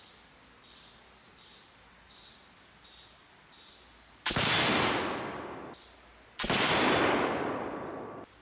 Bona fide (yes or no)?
yes